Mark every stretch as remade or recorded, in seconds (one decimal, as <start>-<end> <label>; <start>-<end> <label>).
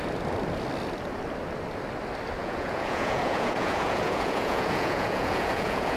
0.0-2.4 recorded; 2.4-6.0 remade